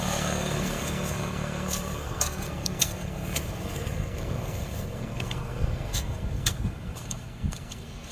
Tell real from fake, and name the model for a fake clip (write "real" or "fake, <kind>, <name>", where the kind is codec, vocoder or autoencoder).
fake, codec, SNAC